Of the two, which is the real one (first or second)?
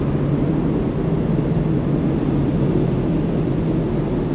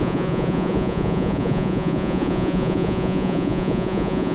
first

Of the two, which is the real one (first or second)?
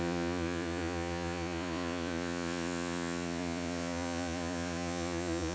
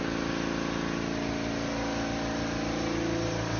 second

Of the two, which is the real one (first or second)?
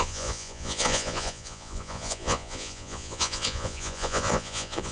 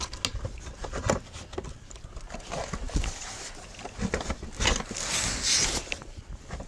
second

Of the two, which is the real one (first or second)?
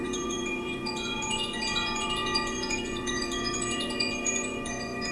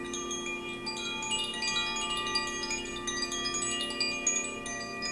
second